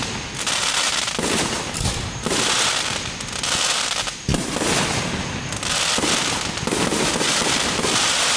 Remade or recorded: recorded